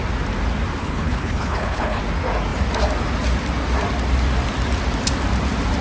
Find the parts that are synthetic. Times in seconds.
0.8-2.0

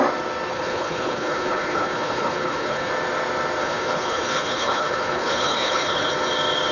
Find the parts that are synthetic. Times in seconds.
0.5-2.9; 3.6-6.1

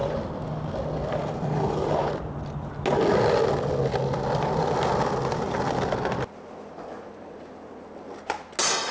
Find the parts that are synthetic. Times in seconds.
none

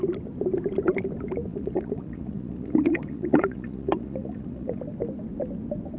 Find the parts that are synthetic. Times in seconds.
1.5-4.8

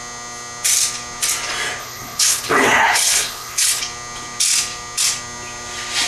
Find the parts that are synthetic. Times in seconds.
1.8-3.8

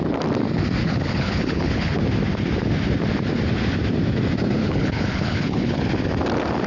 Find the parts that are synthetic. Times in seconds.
0.8-2.0; 4.6-5.8

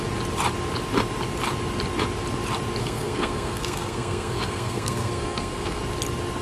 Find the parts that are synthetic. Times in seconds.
2.8-5.8